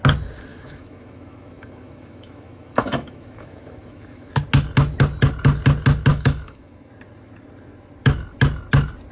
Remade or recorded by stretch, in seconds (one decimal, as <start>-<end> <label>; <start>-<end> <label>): 0.0-0.5 recorded; 0.5-4.3 remade; 4.3-6.1 recorded; 6.1-6.9 remade; 6.9-9.1 recorded